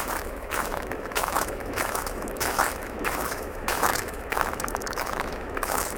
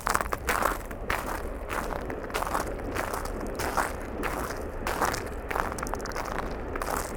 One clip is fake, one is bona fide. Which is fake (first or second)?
first